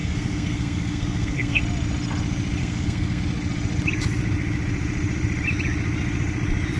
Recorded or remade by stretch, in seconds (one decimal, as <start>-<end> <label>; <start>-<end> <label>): 0.0-1.6 remade; 1.6-2.6 recorded; 2.6-3.2 remade; 3.2-6.8 recorded